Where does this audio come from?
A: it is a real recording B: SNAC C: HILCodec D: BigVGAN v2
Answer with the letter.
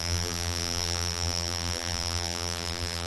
D